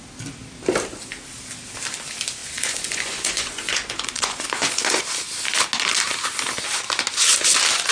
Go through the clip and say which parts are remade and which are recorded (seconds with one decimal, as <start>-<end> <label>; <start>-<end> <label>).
0.0-2.4 recorded; 2.4-5.0 remade; 5.0-7.9 recorded